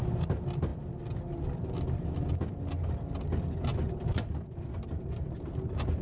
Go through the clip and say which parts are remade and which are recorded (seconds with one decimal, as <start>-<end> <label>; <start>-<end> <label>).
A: 0.0-6.0 recorded